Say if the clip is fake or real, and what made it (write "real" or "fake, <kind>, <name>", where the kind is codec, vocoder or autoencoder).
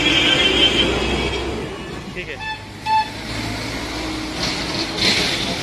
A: real